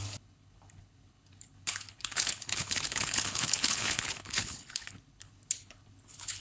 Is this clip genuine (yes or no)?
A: no